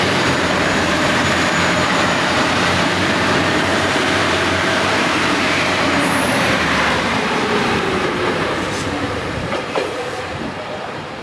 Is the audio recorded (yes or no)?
no